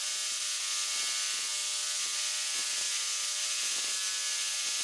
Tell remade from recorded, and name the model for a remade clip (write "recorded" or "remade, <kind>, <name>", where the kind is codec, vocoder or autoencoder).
recorded